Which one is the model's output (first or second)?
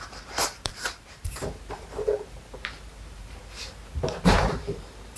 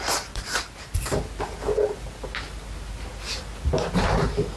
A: first